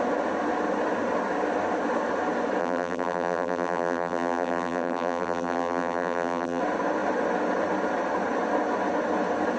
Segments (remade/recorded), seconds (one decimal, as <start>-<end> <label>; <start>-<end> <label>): 0.0-2.6 recorded; 2.6-6.6 remade; 6.6-9.6 recorded